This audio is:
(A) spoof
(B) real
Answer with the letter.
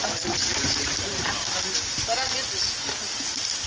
B